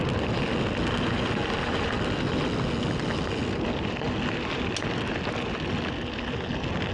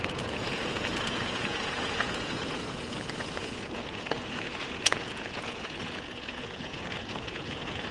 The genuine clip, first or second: first